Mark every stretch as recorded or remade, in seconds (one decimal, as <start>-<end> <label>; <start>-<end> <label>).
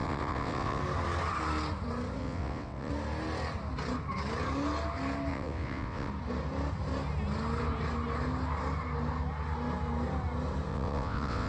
0.0-0.8 remade; 0.8-2.2 recorded; 2.2-2.9 remade; 2.9-5.3 recorded; 5.3-6.1 remade; 6.1-10.7 recorded; 10.7-11.5 remade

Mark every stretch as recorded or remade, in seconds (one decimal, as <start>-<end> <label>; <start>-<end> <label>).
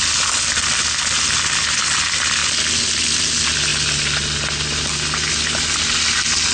0.0-6.5 recorded